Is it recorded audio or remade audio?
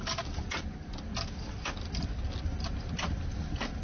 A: recorded